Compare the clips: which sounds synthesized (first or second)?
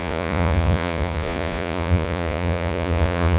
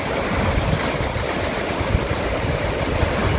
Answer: first